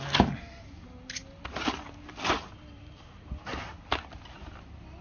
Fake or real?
real